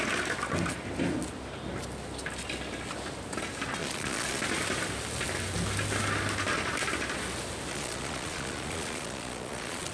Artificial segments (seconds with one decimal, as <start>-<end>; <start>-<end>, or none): 3.8-4.4; 7.7-9.9